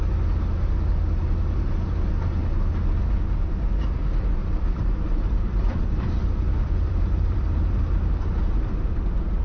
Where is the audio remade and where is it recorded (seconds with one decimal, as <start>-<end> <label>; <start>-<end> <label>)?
0.0-4.4 recorded; 4.4-8.4 remade; 8.4-9.4 recorded